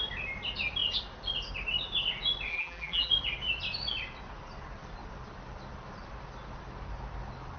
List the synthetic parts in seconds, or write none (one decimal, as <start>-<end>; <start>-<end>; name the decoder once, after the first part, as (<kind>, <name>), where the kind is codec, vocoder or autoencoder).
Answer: 2.5-3.1 (vocoder, BigVGAN v2)